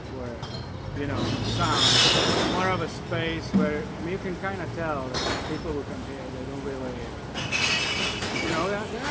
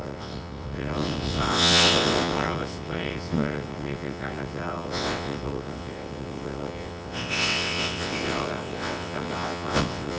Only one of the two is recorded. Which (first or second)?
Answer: first